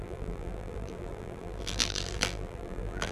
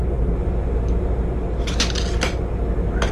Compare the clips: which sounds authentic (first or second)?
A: second